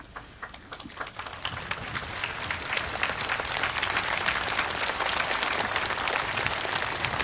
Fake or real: real